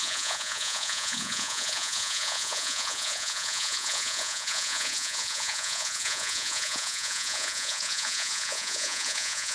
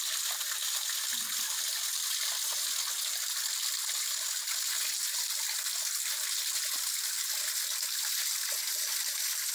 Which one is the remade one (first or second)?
first